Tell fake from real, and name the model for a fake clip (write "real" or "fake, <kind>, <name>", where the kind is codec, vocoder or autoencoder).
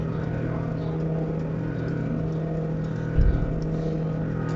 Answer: real